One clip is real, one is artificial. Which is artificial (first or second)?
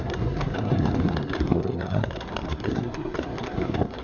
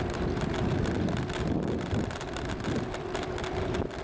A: first